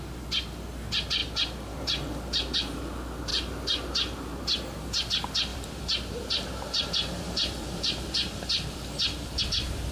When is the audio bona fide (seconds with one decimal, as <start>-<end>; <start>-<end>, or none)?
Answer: 0.0-5.5; 9.4-9.9